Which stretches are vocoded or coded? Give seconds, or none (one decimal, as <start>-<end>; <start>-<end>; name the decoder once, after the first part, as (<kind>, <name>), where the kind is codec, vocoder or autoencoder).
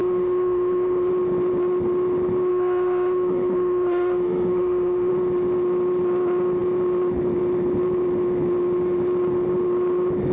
0.0-1.1 (autoencoder, DAC-VAE); 2.5-5.1